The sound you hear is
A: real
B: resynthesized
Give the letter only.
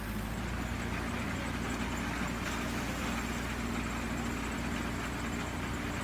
A